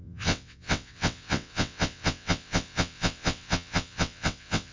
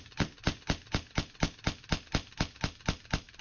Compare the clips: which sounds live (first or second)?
second